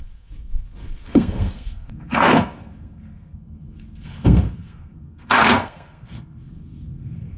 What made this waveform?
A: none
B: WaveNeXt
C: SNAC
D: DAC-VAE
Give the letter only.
C